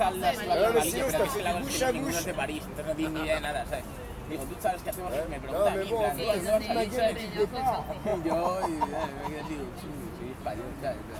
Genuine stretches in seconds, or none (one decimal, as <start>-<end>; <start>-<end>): 0.0-11.2